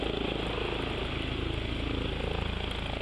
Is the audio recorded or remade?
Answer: recorded